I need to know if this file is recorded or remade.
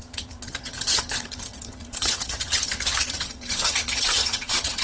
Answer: remade